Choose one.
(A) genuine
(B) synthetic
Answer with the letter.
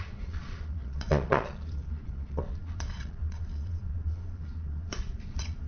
B